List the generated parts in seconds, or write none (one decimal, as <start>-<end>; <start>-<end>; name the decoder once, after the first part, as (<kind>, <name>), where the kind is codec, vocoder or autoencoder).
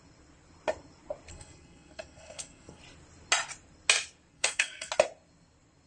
1.3-2.8 (codec, SNAC); 4.3-4.9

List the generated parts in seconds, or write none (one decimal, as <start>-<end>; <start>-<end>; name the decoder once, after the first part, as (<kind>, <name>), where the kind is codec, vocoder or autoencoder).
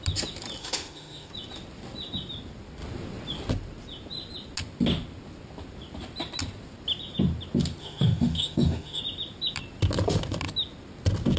0.6-1.3 (autoencoder, DAC-VAE); 7.8-9.0